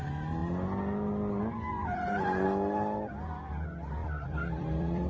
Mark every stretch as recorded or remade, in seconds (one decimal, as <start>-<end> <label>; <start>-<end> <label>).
0.0-4.0 recorded; 4.0-5.1 remade